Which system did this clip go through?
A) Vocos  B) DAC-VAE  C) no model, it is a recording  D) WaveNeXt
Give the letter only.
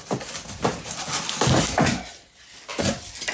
C